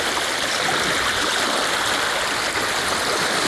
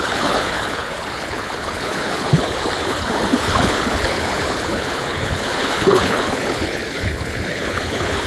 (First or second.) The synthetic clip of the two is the second